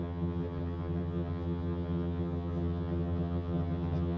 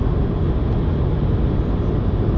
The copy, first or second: first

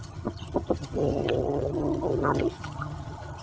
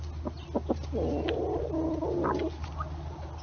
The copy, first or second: first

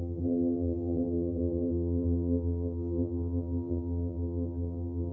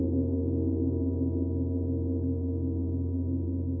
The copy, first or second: first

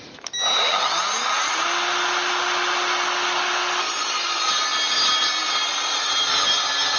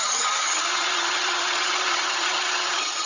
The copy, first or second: second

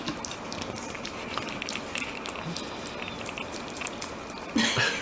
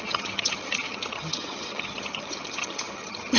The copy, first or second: second